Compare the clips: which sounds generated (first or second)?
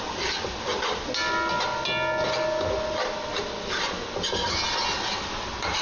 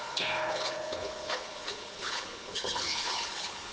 second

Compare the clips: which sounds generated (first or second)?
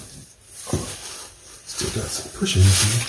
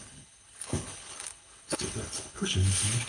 second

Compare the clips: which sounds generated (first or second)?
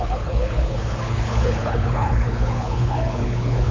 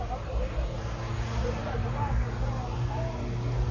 first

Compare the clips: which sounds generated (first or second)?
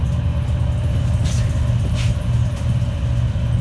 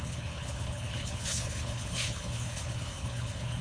second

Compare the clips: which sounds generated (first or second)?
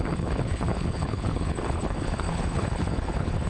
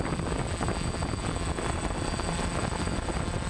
first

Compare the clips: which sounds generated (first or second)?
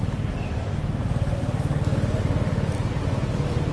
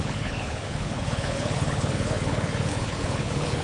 second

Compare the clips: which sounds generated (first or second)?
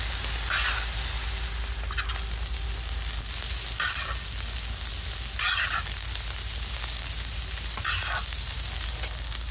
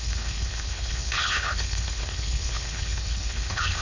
second